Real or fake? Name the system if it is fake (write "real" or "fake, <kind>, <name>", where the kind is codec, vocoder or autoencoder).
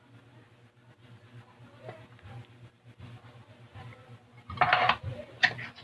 real